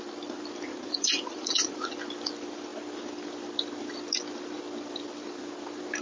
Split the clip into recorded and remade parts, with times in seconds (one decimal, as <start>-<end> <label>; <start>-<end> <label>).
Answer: 0.0-0.7 recorded; 0.7-1.9 remade; 1.9-6.0 recorded